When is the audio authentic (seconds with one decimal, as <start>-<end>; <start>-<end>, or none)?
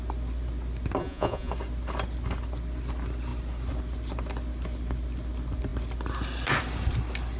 0.0-1.0; 1.5-7.4